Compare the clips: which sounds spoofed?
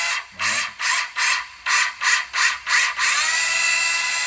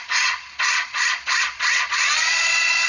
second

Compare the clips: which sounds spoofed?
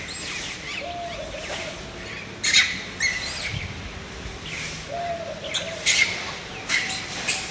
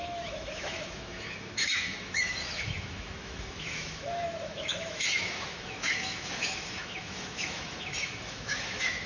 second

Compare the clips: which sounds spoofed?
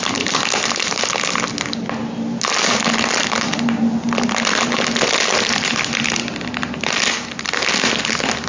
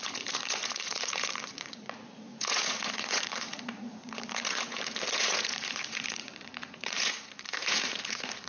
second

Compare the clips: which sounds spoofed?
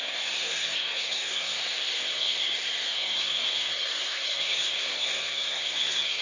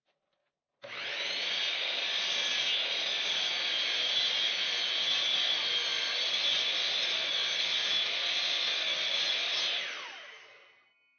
first